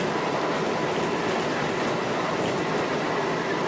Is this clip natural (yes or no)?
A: yes